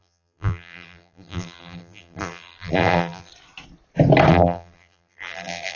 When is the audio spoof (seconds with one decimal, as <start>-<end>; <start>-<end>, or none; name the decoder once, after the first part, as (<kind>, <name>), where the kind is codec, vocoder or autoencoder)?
0.0-3.3 (vocoder, BigVGAN v2); 4.3-5.8